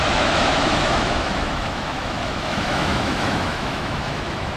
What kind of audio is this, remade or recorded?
remade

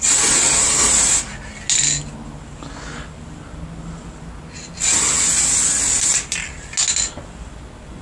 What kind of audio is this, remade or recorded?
recorded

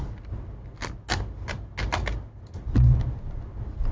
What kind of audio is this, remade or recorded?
recorded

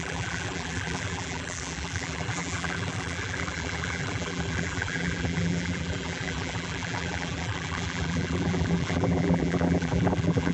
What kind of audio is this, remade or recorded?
remade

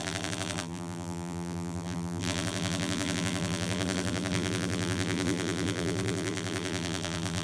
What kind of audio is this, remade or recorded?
remade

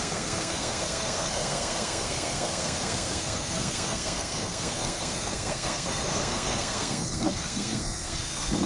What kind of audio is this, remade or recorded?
remade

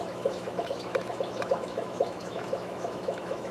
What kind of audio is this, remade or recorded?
remade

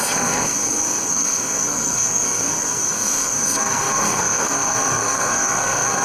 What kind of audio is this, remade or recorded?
remade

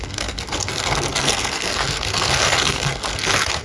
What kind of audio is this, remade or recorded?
remade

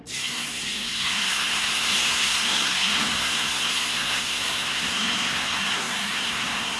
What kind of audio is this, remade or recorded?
remade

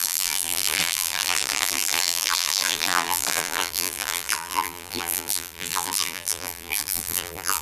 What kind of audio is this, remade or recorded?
remade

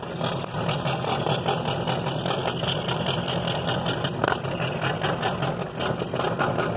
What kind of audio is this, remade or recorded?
recorded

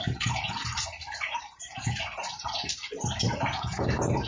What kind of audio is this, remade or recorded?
remade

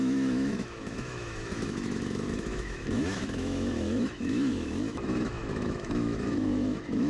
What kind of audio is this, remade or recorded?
remade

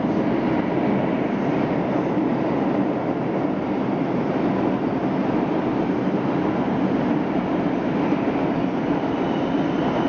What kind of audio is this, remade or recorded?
recorded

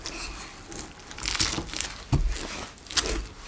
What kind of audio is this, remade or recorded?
recorded